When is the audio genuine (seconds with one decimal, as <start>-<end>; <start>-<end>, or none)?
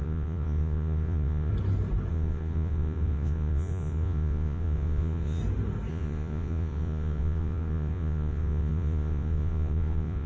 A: 1.5-2.1; 5.4-5.9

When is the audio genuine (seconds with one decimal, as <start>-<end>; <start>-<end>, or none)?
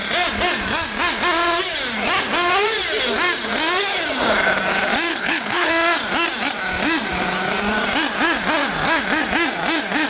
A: 0.0-5.1; 5.7-10.1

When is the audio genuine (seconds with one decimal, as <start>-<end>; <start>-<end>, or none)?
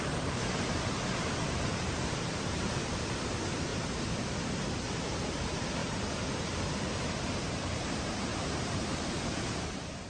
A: 3.7-4.6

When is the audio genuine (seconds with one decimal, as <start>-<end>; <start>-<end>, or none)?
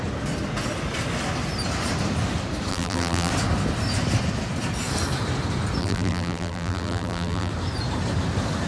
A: 0.0-2.7; 3.3-5.8; 7.5-8.7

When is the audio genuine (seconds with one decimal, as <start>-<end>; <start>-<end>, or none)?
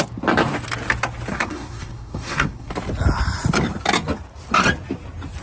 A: 0.0-1.3; 2.7-5.4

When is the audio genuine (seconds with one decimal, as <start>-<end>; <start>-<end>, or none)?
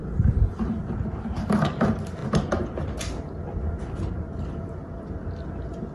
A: 0.0-0.8; 2.2-3.6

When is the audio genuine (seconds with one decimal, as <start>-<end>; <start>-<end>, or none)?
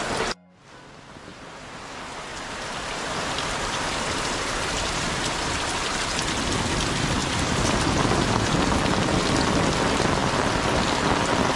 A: 0.0-1.3; 1.8-2.3; 6.0-7.2; 8.6-11.6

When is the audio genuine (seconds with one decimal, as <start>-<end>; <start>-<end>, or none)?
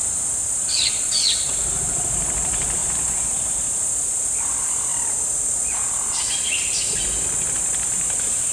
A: 0.0-8.5